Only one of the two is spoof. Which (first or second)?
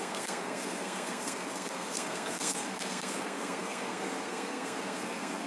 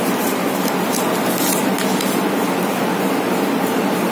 first